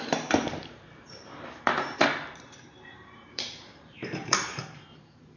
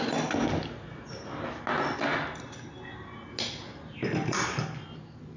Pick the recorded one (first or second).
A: second